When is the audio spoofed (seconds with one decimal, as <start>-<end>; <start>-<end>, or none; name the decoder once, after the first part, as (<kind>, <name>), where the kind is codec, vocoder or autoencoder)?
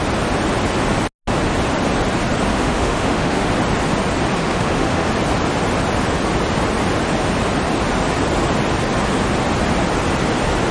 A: 2.5-3.5 (autoencoder, DAC-VAE); 4.4-5.1